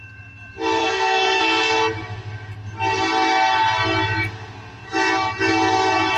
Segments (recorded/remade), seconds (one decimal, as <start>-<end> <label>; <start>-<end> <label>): 0.0-0.8 recorded; 0.8-1.4 remade; 1.4-6.2 recorded